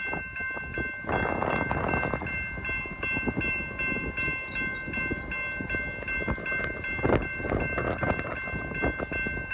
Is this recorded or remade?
recorded